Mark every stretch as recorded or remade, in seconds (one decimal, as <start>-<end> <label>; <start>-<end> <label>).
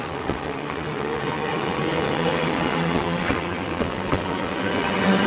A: 0.0-5.3 remade